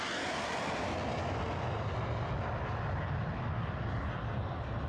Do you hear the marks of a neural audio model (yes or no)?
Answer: no